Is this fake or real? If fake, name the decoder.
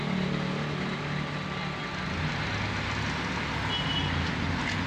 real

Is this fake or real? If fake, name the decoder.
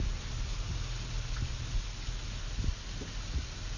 real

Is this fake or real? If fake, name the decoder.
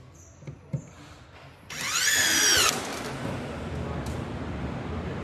real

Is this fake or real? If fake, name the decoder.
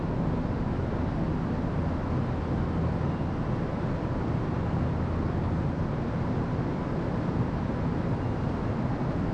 real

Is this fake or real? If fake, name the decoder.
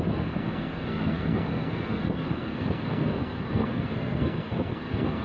fake, codec, SNAC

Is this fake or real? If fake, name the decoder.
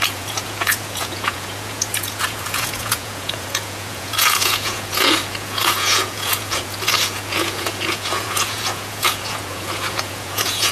fake, vocoder, Vocos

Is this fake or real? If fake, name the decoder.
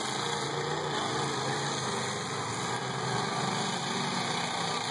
real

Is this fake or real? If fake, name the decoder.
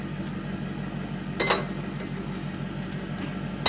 real